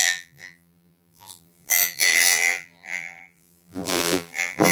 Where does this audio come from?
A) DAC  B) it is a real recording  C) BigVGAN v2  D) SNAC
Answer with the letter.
C